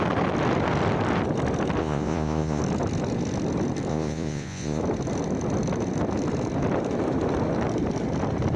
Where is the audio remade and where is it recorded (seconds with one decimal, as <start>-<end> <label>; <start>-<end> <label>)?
0.0-1.8 recorded; 1.8-2.6 remade; 2.6-3.9 recorded; 3.9-4.8 remade; 4.8-8.6 recorded